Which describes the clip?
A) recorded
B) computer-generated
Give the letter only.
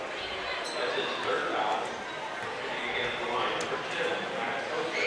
A